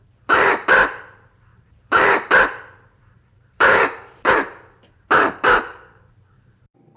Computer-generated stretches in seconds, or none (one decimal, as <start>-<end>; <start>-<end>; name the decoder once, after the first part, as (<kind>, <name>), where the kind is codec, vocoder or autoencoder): 0.0-7.0 (vocoder, BigVGAN v2)